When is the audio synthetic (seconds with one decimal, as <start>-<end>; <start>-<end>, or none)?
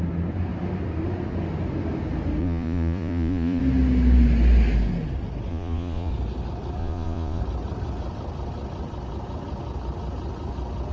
2.4-3.6; 5.5-6.1; 6.8-7.4